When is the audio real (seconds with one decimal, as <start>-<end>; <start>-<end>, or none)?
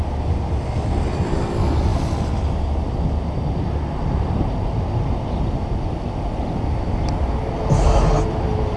0.0-8.8